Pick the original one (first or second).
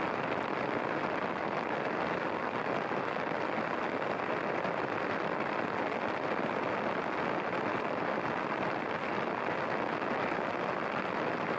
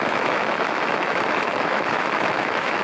first